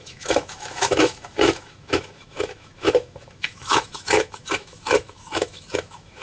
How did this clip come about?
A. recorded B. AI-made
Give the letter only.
B